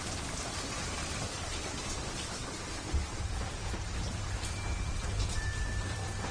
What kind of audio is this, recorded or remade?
remade